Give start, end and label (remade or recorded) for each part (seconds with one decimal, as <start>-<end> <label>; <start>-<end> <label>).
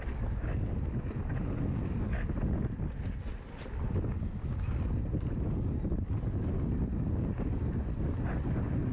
0.0-8.9 recorded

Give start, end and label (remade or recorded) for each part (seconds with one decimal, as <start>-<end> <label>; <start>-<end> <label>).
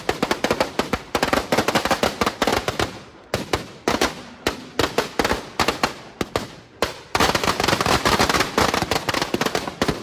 0.0-2.5 recorded; 2.5-3.0 remade; 3.0-10.0 recorded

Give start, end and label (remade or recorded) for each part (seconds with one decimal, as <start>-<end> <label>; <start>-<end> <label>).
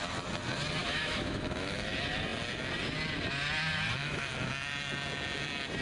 0.0-0.8 recorded; 0.8-1.9 remade; 1.9-4.0 recorded; 4.0-4.5 remade; 4.5-5.8 recorded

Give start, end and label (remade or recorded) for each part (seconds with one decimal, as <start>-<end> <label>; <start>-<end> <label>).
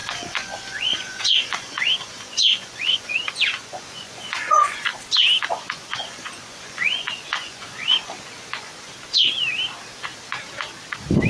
0.0-4.9 remade; 4.9-5.5 recorded; 5.5-8.9 remade; 8.9-11.3 recorded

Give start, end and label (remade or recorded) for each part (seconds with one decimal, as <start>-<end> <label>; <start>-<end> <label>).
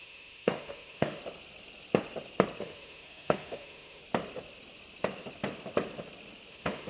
0.0-1.2 remade; 1.2-2.6 recorded; 2.6-4.0 remade; 4.0-6.5 recorded; 6.5-6.9 remade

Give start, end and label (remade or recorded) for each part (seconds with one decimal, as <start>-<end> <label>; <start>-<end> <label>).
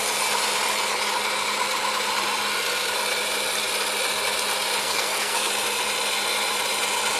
0.0-4.8 recorded; 4.8-5.5 remade; 5.5-7.2 recorded